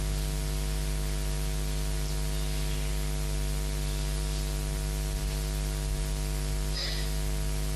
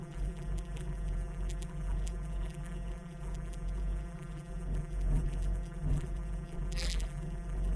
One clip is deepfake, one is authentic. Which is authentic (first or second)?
first